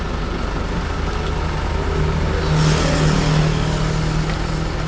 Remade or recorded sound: recorded